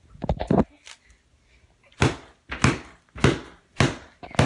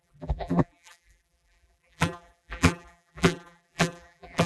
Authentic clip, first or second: first